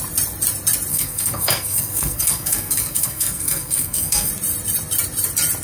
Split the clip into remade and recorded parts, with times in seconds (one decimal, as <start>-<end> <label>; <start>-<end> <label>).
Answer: 0.0-0.9 recorded; 0.9-4.3 remade; 4.3-5.6 recorded